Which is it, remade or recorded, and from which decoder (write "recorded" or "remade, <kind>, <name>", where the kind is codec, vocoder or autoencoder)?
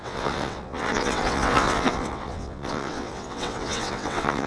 remade, vocoder, WaveNeXt